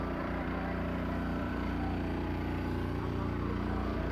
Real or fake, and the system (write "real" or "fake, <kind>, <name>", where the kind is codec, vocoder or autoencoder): fake, vocoder, BigVGAN v2